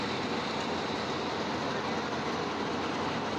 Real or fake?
real